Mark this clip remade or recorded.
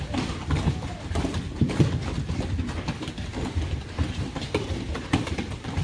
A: recorded